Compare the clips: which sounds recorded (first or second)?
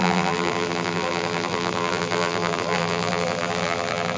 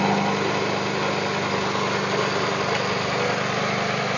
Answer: second